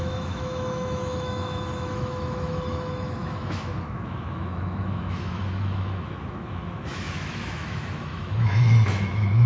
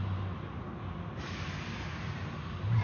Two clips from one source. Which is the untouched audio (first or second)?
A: second